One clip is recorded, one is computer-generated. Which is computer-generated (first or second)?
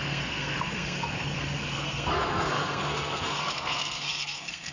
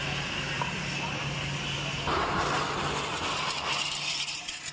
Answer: first